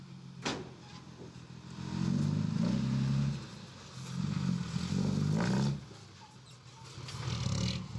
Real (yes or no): yes